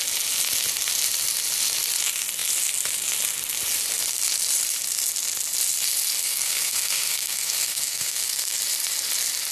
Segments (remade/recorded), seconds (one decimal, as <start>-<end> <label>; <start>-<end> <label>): 0.0-6.2 recorded; 6.2-8.6 remade; 8.6-9.5 recorded